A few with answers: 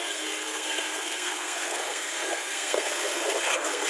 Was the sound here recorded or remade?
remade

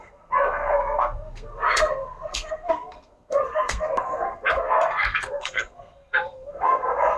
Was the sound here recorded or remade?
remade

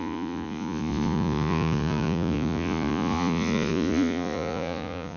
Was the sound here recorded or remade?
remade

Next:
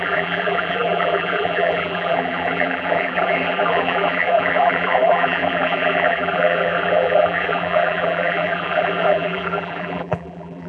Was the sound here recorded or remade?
remade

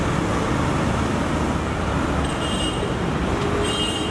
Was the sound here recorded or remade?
recorded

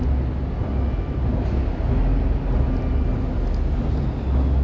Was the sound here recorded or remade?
recorded